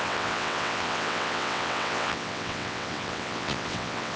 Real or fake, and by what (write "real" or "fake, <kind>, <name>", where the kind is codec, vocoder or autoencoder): fake, vocoder, WaveNeXt